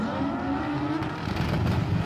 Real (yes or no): yes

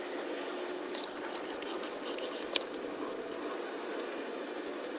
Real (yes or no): yes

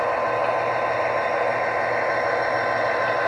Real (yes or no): yes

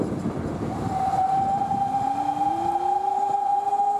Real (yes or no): yes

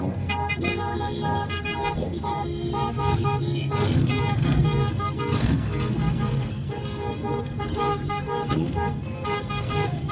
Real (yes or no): no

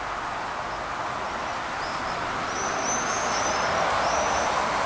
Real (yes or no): yes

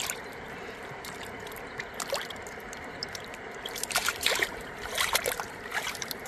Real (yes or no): no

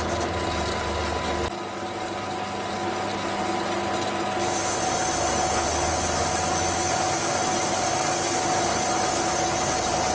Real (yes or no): yes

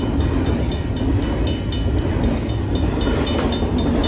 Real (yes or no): yes